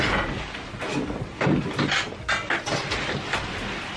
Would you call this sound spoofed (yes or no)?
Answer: no